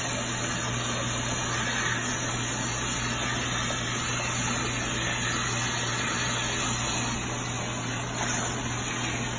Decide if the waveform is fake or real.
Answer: real